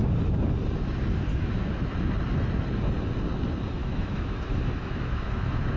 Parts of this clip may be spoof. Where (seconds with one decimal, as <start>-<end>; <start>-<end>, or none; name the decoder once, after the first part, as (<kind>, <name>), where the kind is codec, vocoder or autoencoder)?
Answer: 1.3-1.9 (autoencoder, DAC-VAE); 3.8-5.8